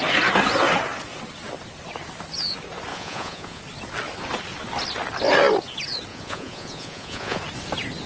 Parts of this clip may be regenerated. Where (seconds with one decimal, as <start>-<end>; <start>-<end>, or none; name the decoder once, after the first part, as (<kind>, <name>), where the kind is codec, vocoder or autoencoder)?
2.9-3.6 (vocoder, Vocos); 6.1-7.4

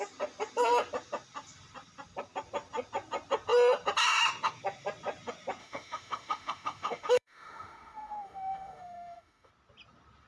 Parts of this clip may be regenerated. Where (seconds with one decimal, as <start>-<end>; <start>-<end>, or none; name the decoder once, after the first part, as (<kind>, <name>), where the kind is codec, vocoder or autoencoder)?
5.6-9.5 (autoencoder, DAC-VAE)

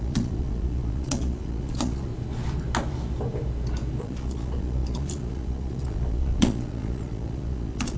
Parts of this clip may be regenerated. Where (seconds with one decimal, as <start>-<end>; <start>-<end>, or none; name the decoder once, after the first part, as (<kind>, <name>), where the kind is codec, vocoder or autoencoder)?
0.0-2.1 (vocoder, Vocos); 4.0-8.0

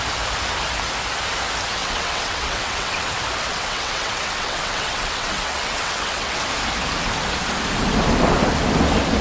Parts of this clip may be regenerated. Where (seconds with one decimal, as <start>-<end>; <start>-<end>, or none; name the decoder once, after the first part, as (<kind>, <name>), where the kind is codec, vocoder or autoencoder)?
1.8-3.1 (vocoder, WaveNeXt); 3.5-6.4

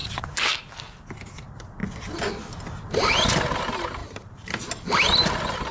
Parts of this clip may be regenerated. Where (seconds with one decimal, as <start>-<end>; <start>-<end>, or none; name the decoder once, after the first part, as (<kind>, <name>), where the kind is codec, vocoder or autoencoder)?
4.0-4.6 (vocoder, BigVGAN v2)